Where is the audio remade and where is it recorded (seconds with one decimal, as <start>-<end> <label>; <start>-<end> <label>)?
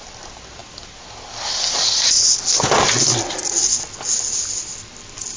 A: 0.0-5.4 recorded